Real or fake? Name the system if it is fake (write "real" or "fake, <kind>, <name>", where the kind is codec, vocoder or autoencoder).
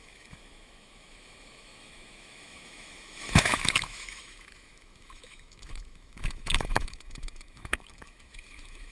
fake, autoencoder, DAC-VAE